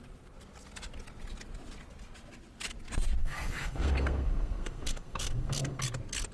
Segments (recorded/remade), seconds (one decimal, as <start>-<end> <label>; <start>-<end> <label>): 0.0-3.2 recorded; 3.2-5.8 remade; 5.8-6.3 recorded